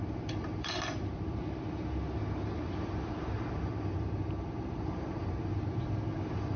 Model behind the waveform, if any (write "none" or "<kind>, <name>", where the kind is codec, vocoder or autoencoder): vocoder, BigVGAN v2